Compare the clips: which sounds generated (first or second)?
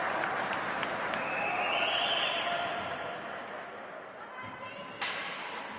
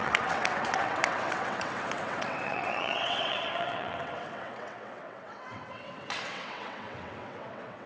second